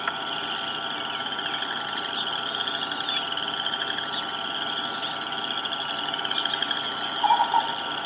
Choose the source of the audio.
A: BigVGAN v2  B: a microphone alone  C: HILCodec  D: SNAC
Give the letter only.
B